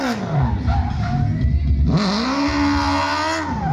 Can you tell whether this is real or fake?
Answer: real